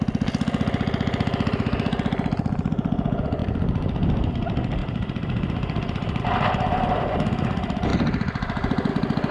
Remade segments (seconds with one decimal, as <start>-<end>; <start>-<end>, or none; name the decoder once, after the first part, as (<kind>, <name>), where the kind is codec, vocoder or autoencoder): 3.4-4.3 (vocoder, BigVGAN v2); 4.8-6.2